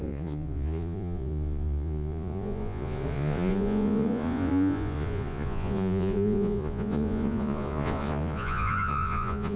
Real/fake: fake